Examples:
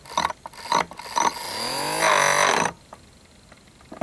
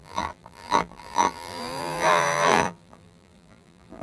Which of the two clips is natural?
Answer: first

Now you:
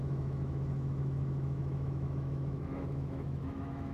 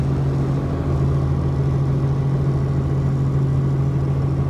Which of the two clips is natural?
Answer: second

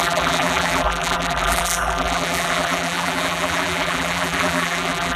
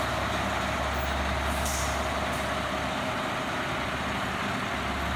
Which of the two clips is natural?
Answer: second